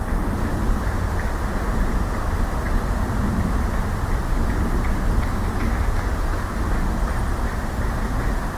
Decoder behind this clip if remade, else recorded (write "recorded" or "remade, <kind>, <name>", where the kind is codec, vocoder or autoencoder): recorded